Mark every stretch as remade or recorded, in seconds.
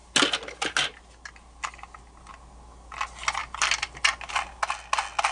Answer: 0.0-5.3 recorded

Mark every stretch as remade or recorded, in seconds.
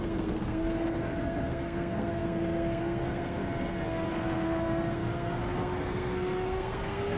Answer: 0.0-3.4 remade; 3.4-4.1 recorded; 4.1-7.2 remade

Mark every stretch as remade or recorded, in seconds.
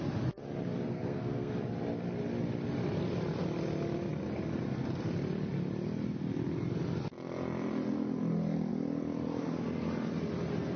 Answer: 0.0-0.9 recorded; 0.9-1.5 remade; 1.5-10.8 recorded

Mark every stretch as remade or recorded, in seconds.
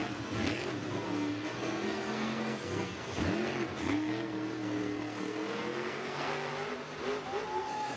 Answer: 0.0-6.5 remade; 6.5-7.5 recorded; 7.5-8.0 remade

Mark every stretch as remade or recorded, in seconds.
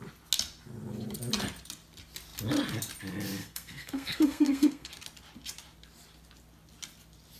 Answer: 0.0-3.4 recorded; 3.4-4.9 remade; 4.9-7.4 recorded